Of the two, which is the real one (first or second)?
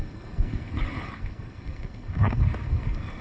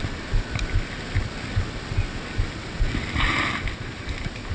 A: second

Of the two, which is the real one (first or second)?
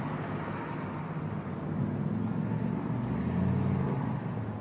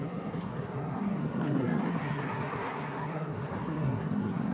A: first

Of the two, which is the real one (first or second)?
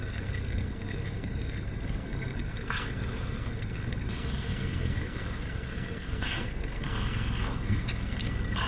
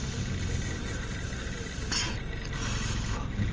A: second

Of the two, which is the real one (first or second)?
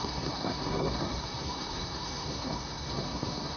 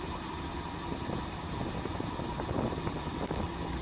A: second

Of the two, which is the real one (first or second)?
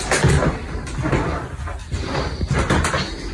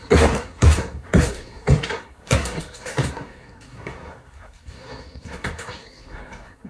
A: first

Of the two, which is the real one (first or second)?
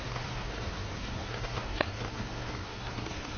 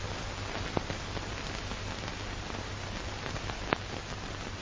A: second